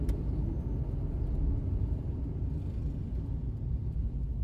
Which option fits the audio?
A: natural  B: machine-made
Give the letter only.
A